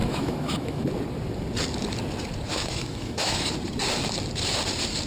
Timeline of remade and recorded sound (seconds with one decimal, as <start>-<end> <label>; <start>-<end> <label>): 0.0-0.8 remade; 0.8-2.5 recorded; 2.5-3.5 remade; 3.5-5.1 recorded